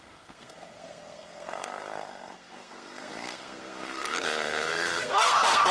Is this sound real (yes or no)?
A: no